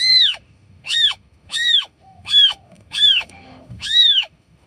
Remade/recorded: remade